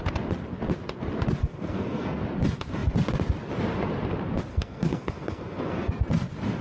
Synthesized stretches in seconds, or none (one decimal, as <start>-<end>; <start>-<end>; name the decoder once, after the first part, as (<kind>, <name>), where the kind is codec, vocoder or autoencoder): 1.4-2.2 (codec, SNAC); 4.5-5.9